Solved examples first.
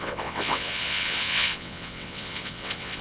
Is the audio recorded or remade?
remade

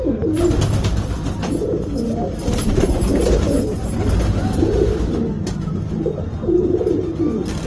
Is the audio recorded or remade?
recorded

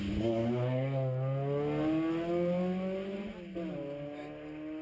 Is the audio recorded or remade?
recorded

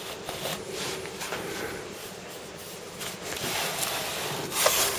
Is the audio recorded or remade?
remade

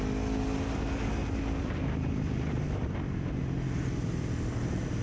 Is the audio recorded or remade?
recorded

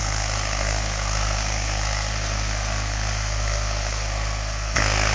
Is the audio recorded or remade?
remade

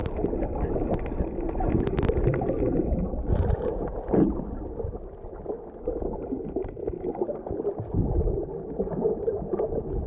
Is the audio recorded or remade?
remade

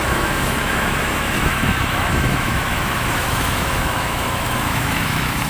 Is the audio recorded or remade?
remade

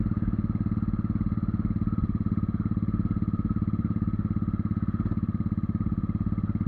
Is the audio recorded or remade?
recorded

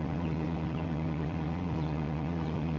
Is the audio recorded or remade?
remade